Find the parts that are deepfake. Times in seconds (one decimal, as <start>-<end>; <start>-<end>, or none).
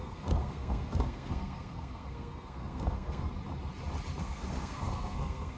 0.0-3.3; 4.2-5.6